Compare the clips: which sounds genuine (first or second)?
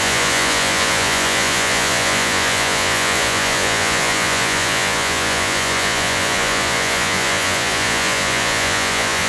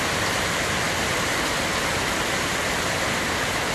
second